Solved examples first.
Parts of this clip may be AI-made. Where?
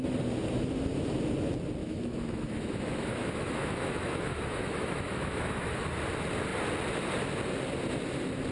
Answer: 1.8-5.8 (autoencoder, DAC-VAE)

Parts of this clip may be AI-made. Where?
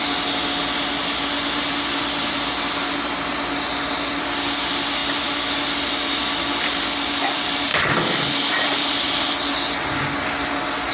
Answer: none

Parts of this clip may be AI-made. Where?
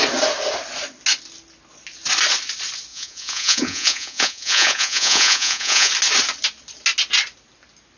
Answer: 2.9-5.9 (vocoder, Vocos)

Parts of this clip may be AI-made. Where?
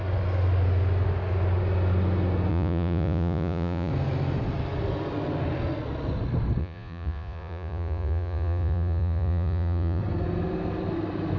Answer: 2.5-3.9 (vocoder, Vocos); 6.6-10.0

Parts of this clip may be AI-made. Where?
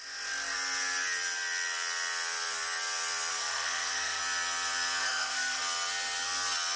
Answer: 3.3-4.2 (codec, SNAC); 5.0-5.6